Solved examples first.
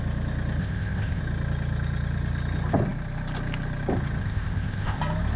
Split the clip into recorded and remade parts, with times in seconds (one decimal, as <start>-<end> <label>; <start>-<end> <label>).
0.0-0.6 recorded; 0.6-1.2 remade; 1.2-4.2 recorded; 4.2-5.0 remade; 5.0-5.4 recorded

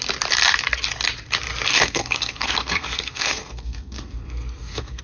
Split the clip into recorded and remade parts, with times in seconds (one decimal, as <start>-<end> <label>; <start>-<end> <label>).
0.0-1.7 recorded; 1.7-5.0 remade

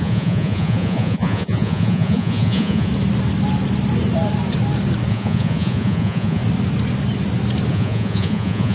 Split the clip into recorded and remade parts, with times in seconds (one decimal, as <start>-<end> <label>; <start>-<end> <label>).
0.0-2.9 remade; 2.9-5.1 recorded; 5.1-6.4 remade; 6.4-7.7 recorded; 7.7-8.7 remade